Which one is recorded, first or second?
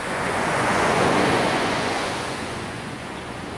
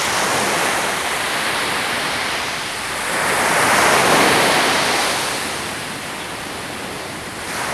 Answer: second